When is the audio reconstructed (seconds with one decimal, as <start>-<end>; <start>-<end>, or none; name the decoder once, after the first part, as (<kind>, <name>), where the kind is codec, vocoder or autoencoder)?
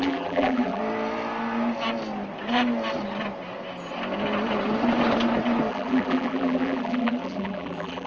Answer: 0.0-0.8 (vocoder, BigVGAN v2); 5.7-8.1